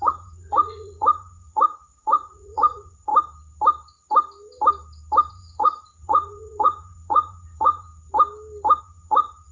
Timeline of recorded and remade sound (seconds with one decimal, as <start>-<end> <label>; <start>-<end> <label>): 0.0-3.1 remade; 3.1-5.3 recorded; 5.3-7.9 remade; 7.9-8.8 recorded; 8.8-9.5 remade